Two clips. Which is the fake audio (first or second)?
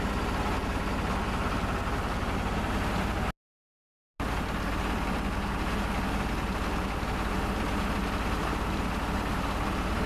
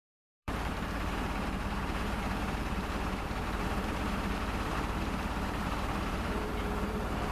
second